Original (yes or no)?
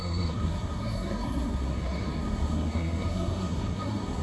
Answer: no